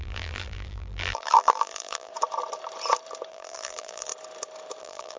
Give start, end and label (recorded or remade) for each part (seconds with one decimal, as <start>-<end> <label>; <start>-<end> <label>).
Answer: 0.0-2.1 remade; 2.1-3.3 recorded; 3.3-4.1 remade; 4.1-4.8 recorded; 4.8-5.2 remade